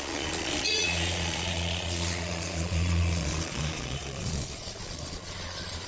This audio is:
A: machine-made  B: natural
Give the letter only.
A